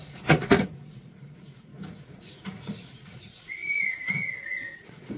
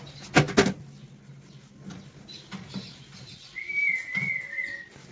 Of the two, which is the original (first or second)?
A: second